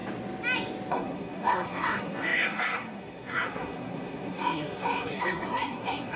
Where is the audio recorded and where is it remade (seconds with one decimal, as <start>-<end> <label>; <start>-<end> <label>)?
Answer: 0.0-0.9 recorded; 0.9-6.2 remade